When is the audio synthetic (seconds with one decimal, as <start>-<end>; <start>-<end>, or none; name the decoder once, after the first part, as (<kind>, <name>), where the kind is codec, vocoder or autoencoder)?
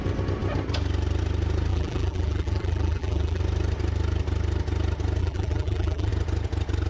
1.7-3.4 (vocoder, BigVGAN v2); 5.2-6.1